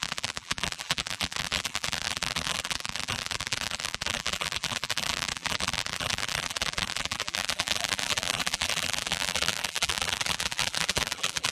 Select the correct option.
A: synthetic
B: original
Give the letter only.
A